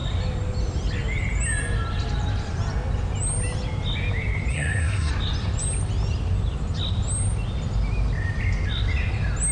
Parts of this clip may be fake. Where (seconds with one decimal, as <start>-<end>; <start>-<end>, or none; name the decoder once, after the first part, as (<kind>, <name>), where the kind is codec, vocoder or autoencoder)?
4.5-5.1 (codec, SNAC)